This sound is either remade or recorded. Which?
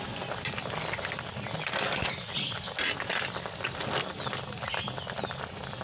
recorded